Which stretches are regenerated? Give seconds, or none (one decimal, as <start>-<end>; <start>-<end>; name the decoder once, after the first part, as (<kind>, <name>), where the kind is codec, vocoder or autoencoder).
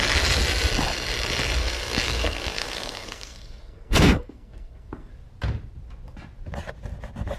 1.6-5.1 (codec, SNAC)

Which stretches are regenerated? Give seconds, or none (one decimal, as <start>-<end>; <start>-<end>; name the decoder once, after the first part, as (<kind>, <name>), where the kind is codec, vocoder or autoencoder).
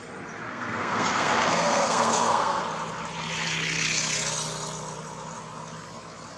0.5-2.6 (codec, SNAC)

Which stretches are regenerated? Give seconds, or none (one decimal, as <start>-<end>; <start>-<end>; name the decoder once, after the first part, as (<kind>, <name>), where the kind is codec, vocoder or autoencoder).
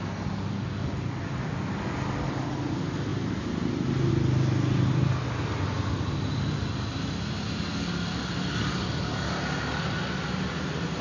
none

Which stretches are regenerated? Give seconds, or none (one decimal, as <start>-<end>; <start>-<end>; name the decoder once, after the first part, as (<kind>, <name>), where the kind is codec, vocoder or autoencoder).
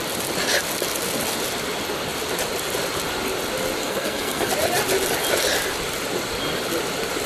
3.8-4.5 (codec, SNAC)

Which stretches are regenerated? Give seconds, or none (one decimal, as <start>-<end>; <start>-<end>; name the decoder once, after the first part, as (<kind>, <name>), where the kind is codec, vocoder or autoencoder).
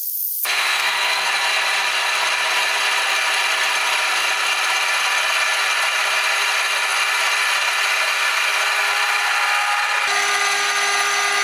0.0-1.3 (codec, SNAC)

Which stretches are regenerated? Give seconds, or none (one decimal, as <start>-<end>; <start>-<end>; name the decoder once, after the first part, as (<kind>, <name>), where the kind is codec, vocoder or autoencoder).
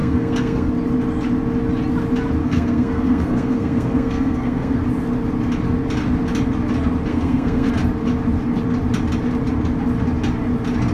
0.0-0.7 (codec, SNAC); 2.4-4.8; 7.1-7.7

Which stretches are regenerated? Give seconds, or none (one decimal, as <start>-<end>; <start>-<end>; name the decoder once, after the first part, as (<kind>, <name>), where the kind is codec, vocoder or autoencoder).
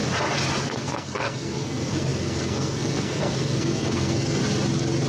0.7-4.4 (codec, SNAC)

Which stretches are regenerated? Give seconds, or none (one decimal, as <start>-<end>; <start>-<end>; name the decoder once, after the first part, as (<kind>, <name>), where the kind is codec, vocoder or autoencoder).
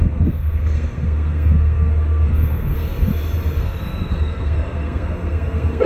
0.0-3.1 (codec, SNAC); 3.6-5.9